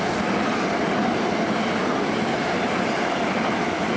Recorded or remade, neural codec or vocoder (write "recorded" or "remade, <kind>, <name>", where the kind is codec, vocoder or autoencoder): recorded